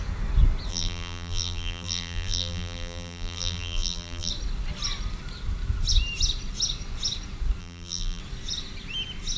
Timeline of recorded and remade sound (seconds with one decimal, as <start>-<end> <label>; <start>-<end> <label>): 0.0-0.7 recorded; 0.7-4.3 remade; 4.3-7.6 recorded; 7.6-8.2 remade; 8.2-9.4 recorded